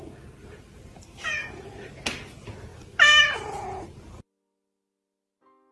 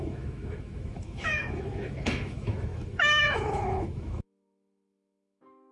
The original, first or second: first